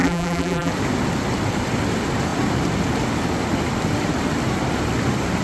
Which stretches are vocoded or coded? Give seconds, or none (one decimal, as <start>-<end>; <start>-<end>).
0.0-0.7